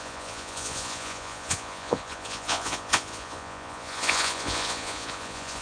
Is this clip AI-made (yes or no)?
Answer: yes